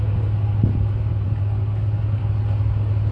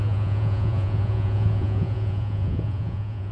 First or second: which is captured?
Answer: first